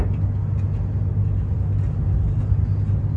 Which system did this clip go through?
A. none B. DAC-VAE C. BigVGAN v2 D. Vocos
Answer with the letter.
A